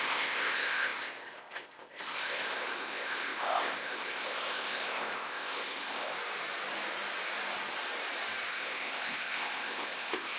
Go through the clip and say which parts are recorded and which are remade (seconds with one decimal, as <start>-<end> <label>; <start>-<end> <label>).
0.0-6.1 remade; 6.1-8.5 recorded; 8.5-10.4 remade